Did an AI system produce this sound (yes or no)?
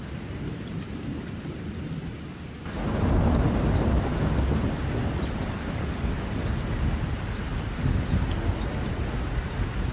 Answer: no